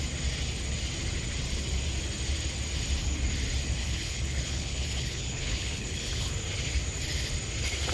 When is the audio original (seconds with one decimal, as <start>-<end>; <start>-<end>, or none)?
0.0-3.8; 6.3-7.9